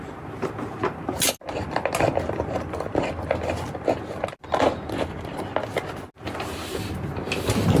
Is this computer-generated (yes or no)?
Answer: no